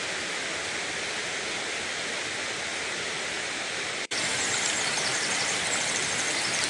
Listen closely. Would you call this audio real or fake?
real